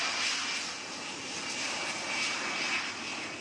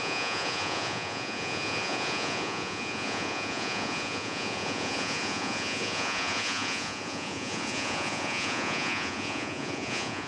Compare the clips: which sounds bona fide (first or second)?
first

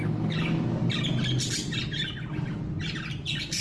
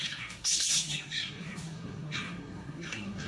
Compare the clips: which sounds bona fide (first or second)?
first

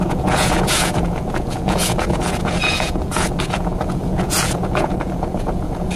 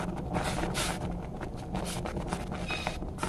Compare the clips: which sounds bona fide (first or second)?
second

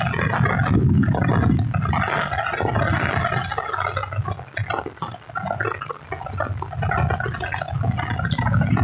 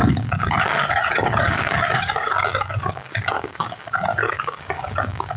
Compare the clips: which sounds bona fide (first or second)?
first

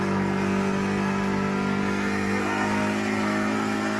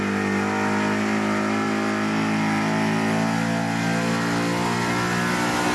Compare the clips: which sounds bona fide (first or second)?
second